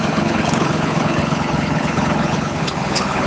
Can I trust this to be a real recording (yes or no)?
no